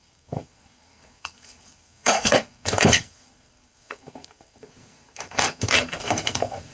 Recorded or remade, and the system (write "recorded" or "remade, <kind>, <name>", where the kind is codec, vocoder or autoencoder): remade, codec, SNAC